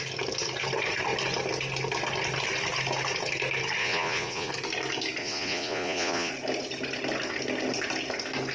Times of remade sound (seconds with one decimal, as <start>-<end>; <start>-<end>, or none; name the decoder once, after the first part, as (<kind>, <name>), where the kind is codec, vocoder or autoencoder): 3.8-4.5 (vocoder, Vocos); 5.2-6.3